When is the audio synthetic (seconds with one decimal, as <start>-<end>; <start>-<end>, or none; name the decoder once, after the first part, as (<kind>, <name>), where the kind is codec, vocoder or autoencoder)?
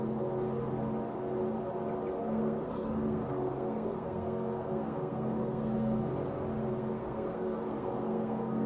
2.2-6.1 (codec, SNAC); 6.7-8.7